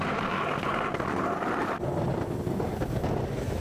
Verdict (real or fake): real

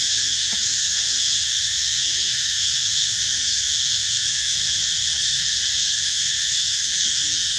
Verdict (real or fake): fake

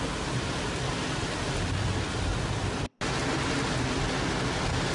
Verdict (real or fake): real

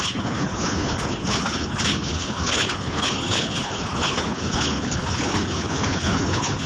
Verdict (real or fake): fake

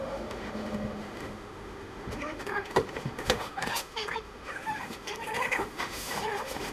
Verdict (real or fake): fake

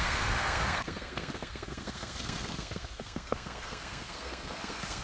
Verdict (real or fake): fake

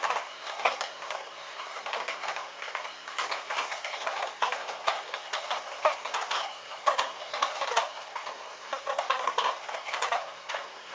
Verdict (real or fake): fake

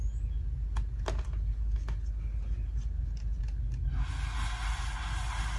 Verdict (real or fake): real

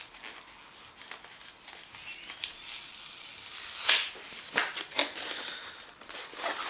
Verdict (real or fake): real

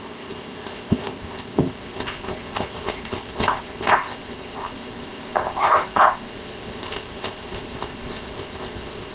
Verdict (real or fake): fake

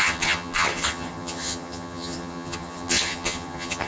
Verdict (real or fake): fake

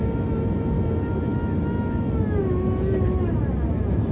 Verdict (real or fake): real